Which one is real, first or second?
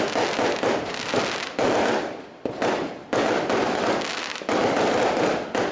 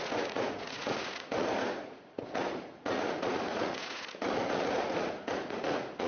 first